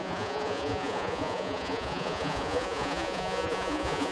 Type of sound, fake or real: fake